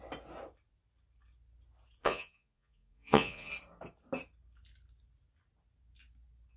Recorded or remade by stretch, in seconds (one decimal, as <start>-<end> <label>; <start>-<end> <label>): 0.0-2.0 recorded; 2.0-3.5 remade; 3.5-6.6 recorded